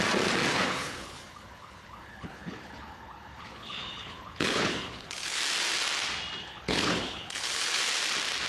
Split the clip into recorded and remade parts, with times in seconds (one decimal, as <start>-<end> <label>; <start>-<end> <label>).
0.0-0.5 recorded; 0.5-5.4 remade; 5.4-6.4 recorded; 6.4-7.8 remade; 7.8-8.5 recorded